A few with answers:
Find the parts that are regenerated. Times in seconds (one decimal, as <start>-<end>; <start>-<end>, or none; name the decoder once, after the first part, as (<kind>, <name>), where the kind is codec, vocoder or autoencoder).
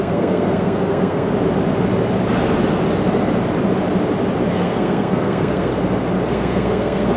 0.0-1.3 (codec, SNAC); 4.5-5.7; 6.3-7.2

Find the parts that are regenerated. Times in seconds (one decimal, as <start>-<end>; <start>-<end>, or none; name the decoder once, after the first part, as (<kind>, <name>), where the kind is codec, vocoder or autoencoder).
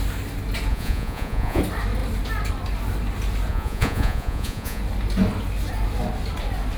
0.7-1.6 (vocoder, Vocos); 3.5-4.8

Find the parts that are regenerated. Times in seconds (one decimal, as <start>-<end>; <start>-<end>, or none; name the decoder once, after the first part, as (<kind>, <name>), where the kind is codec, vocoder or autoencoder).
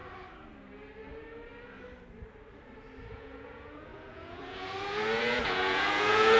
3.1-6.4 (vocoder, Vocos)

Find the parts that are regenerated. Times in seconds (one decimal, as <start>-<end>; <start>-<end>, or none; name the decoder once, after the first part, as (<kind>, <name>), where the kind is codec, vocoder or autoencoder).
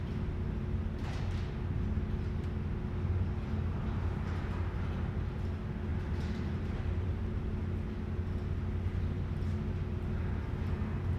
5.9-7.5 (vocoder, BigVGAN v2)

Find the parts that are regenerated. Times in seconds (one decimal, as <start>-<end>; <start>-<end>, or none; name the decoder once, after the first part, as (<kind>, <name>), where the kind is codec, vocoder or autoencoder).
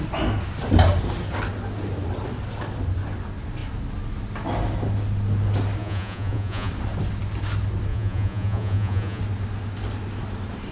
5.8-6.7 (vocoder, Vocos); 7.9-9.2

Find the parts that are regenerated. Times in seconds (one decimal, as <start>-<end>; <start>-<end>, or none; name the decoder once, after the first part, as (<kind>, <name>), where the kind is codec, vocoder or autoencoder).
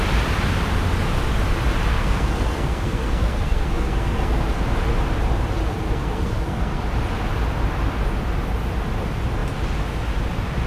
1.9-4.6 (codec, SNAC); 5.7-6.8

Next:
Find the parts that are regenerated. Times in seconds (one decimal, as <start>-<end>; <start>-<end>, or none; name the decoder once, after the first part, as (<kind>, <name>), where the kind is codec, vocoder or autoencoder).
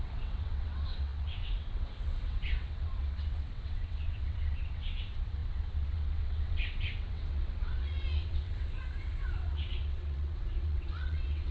0.0-11.5 (vocoder, WaveNeXt)